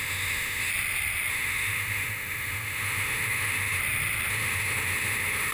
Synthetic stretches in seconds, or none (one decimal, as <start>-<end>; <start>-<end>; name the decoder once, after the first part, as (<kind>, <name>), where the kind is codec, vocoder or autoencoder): 0.0-0.7 (autoencoder, DAC-VAE); 1.3-3.8; 4.3-5.5